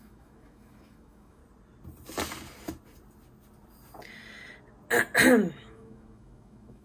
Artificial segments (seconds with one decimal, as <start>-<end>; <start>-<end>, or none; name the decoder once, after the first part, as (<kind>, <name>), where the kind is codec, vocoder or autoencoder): 0.0-1.4 (autoencoder, DAC-VAE); 5.5-6.8